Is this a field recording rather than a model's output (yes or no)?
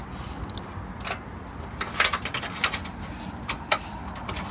yes